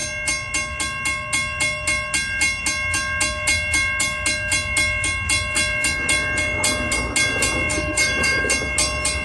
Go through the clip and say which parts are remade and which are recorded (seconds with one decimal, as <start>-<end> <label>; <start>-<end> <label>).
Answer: 0.0-7.7 recorded; 7.7-8.4 remade; 8.4-9.2 recorded